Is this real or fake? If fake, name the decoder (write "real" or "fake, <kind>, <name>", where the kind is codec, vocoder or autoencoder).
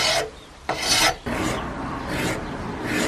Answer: real